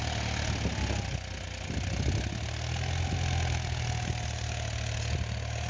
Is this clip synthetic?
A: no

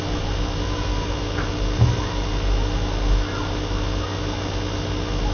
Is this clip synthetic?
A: no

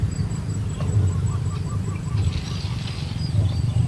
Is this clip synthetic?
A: yes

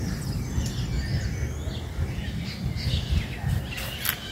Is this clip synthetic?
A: no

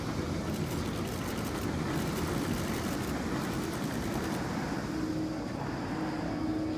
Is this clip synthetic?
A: no